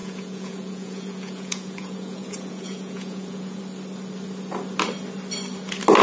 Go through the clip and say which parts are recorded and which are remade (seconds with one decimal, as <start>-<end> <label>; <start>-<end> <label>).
0.0-3.6 remade; 3.6-6.0 recorded